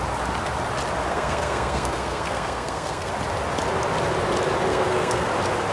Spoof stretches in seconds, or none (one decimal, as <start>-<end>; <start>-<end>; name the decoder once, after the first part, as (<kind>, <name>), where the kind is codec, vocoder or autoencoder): 1.1-3.1 (codec, SNAC); 4.7-5.3